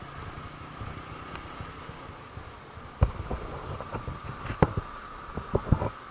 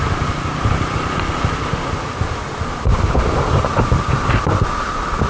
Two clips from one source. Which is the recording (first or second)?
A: first